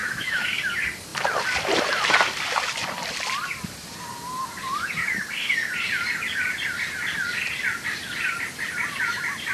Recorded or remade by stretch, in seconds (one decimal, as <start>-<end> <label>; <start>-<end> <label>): 0.0-0.6 remade; 0.6-9.5 recorded